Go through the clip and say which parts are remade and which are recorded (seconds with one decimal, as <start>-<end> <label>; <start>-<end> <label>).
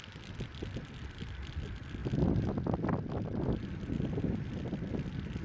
0.0-5.4 recorded